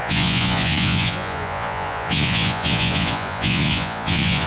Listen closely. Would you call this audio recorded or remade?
remade